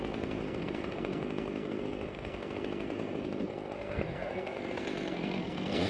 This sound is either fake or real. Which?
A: fake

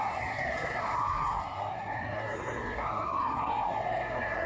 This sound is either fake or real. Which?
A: fake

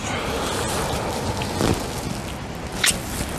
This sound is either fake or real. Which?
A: real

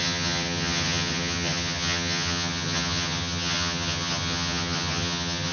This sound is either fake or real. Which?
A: fake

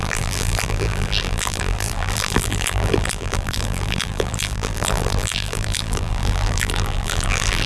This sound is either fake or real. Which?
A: fake